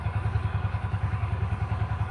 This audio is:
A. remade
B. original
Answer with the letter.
A